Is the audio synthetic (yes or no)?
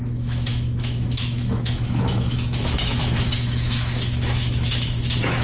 yes